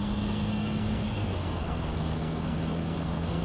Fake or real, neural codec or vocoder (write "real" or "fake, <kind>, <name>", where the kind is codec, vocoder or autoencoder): fake, codec, SNAC